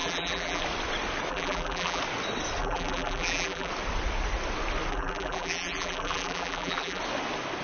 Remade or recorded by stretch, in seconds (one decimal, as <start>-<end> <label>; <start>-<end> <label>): 0.0-0.6 remade; 0.6-1.3 recorded; 1.3-2.0 remade; 2.0-2.6 recorded; 2.6-3.7 remade; 3.7-4.9 recorded; 4.9-7.0 remade; 7.0-7.6 recorded